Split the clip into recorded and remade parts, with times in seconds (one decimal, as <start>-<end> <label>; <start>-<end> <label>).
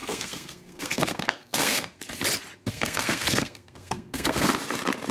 0.0-2.0 remade; 2.0-2.7 recorded; 2.7-4.5 remade; 4.5-5.1 recorded